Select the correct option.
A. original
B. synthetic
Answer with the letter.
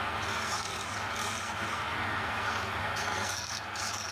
B